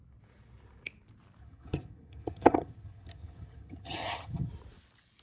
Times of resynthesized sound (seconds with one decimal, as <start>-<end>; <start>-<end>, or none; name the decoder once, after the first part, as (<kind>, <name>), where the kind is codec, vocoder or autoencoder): 1.4-4.5 (vocoder, HiFi-GAN)